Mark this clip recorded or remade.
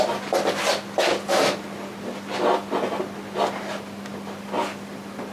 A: recorded